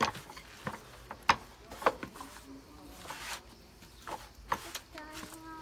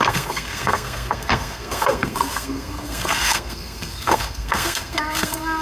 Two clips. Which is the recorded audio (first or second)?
first